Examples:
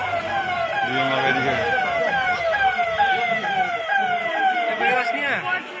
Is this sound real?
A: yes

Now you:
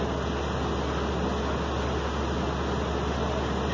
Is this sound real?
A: yes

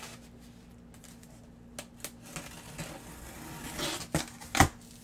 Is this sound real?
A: yes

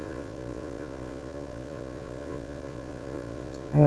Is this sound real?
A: no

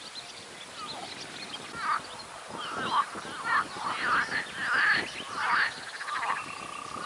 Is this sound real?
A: yes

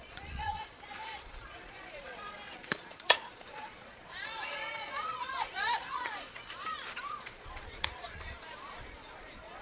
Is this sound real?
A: no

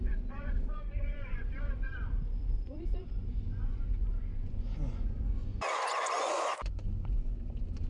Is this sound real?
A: no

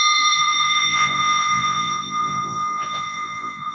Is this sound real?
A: no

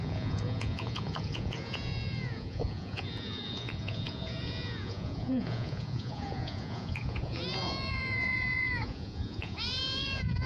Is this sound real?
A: no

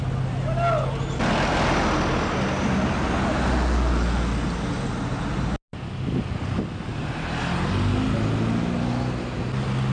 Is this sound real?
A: yes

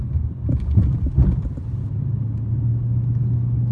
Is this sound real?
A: yes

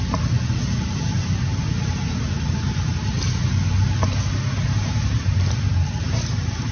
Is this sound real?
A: yes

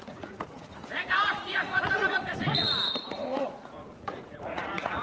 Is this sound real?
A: no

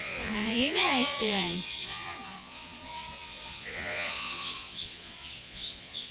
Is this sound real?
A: no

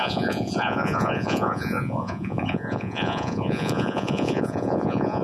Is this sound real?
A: no